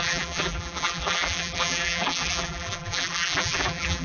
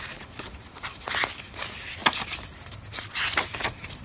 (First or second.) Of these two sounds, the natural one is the second